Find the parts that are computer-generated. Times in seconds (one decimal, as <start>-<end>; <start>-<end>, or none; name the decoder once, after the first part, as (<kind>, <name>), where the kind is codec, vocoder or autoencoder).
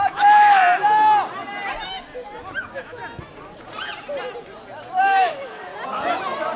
0.0-0.6 (autoencoder, DAC-VAE); 2.6-3.0; 5.0-5.7